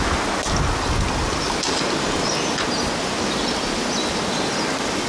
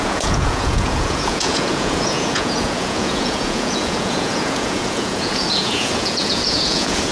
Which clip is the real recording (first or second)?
first